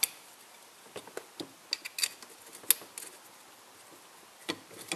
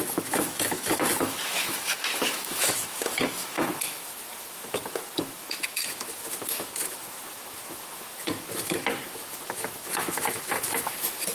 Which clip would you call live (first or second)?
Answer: first